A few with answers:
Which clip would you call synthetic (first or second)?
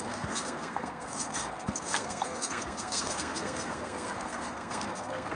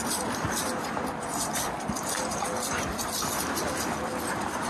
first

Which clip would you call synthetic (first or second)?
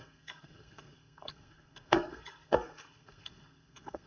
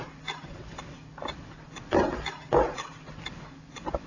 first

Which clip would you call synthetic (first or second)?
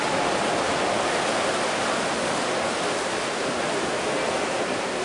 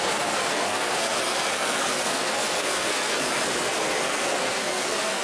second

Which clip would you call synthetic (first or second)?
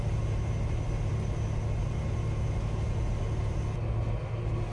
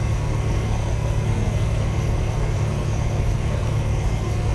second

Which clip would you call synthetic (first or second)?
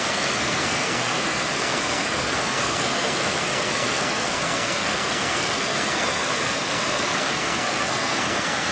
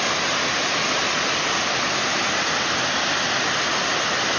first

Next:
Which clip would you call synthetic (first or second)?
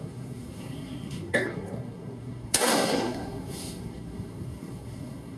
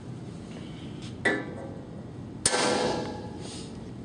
first